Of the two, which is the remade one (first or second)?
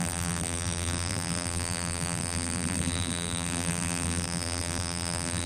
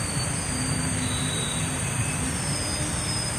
first